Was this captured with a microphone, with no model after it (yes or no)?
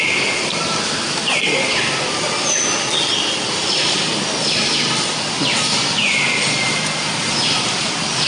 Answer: yes